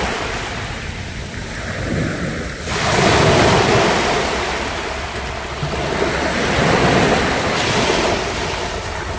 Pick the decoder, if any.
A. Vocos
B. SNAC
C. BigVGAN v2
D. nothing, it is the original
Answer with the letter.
D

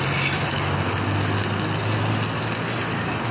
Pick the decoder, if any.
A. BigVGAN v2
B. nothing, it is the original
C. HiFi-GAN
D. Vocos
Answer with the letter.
B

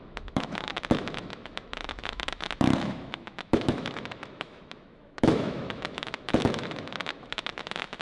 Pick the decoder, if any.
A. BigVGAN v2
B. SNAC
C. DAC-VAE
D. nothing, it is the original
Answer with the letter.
C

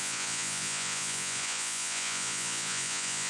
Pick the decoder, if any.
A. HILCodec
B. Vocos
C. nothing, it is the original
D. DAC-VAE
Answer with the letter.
B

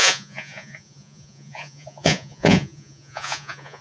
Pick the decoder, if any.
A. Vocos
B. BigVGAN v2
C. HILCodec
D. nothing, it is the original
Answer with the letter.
A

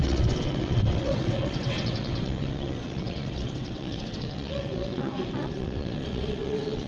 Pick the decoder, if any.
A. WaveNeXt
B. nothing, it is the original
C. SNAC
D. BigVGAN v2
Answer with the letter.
A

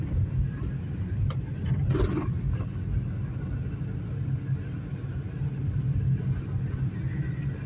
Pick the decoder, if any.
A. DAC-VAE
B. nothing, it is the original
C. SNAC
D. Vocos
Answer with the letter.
B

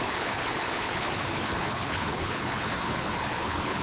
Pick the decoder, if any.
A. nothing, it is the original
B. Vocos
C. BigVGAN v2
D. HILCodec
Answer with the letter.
D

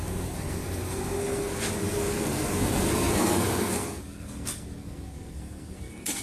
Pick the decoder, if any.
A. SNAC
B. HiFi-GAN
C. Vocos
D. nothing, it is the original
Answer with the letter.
A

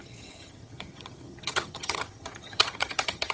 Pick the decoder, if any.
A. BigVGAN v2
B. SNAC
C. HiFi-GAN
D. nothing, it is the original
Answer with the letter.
C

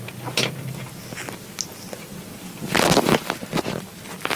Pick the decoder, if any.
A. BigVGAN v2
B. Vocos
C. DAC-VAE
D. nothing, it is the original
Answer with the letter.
D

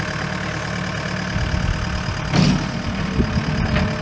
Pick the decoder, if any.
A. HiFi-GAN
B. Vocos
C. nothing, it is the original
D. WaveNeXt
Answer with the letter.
C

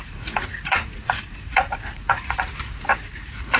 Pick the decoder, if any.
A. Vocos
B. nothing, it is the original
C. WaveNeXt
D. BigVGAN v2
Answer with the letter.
A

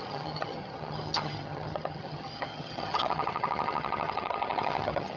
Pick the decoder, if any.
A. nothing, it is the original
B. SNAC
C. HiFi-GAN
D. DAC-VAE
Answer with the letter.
C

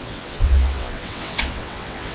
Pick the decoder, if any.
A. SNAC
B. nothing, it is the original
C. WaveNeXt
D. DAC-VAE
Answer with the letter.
C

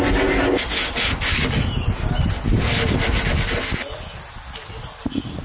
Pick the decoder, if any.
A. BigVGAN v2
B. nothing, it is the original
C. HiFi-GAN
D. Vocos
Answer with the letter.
B